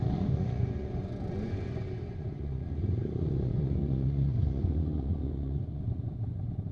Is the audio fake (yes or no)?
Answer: yes